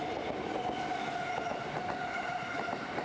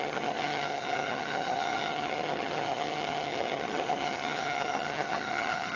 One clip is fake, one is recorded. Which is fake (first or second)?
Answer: second